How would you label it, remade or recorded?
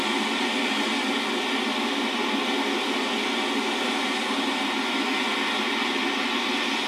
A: recorded